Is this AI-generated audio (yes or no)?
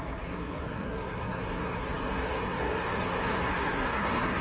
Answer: yes